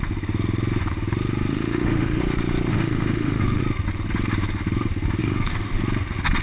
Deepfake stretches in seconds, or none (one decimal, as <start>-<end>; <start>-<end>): 1.5-2.2; 2.7-3.6; 5.2-5.8